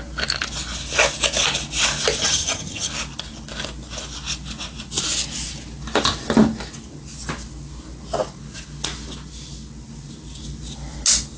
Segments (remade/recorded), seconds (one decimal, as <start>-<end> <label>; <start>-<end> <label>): 0.0-2.2 recorded; 2.2-2.9 remade; 2.9-11.4 recorded